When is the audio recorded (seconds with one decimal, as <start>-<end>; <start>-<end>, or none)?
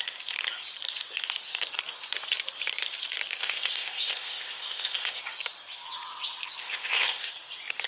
0.0-3.4; 5.2-6.6; 7.3-7.9